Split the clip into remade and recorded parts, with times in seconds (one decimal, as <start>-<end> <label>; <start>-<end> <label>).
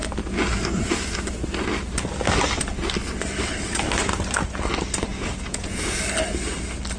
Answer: 0.0-5.1 recorded; 5.1-6.0 remade; 6.0-7.0 recorded